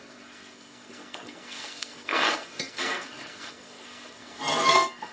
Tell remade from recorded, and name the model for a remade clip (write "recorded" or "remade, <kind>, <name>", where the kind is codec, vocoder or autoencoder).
remade, codec, SNAC